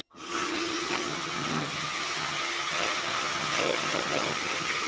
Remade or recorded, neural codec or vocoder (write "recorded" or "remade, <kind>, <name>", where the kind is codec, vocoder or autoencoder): remade, vocoder, HiFi-GAN